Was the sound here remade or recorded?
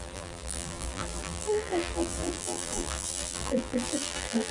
remade